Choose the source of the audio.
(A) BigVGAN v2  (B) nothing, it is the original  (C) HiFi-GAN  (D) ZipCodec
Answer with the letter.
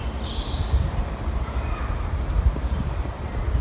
B